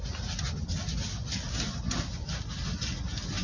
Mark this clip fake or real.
real